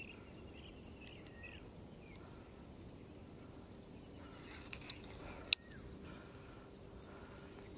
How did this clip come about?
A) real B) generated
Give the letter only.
A